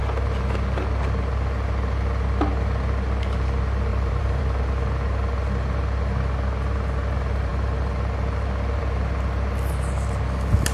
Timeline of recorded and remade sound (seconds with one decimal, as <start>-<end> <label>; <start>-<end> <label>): 0.0-3.9 recorded; 3.9-4.4 remade; 4.4-10.7 recorded